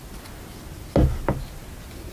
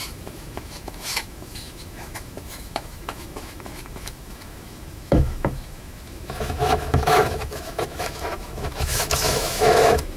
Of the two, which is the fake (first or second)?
second